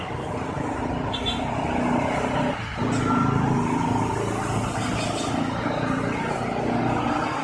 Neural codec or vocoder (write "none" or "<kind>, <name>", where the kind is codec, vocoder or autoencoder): none